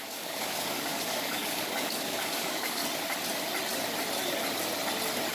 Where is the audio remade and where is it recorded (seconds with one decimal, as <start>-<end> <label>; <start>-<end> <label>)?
0.0-2.8 remade; 2.8-5.3 recorded